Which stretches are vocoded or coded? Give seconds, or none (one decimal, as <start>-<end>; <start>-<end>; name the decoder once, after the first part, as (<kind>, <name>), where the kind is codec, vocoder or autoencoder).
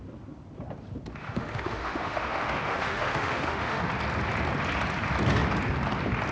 1.2-3.8 (autoencoder, DAC-VAE)